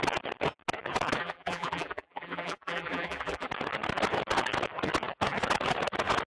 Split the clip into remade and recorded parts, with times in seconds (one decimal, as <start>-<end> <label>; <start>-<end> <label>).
0.0-1.2 recorded; 1.2-3.5 remade; 3.5-6.3 recorded